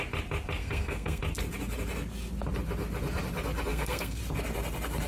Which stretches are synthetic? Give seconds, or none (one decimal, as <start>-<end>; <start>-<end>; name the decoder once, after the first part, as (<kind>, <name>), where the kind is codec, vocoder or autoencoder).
0.6-1.2 (codec, SNAC); 3.7-4.2